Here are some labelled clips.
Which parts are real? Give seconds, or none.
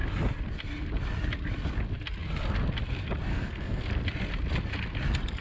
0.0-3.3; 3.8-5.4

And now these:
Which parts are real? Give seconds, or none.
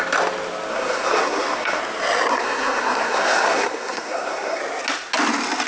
0.0-0.7; 1.8-2.3; 4.6-5.7